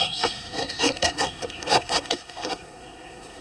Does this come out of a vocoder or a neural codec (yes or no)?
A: yes